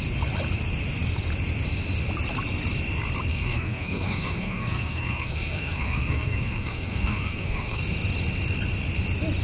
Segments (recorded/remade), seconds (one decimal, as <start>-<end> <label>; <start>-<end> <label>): 0.0-3.3 recorded; 3.3-7.8 remade; 7.8-9.4 recorded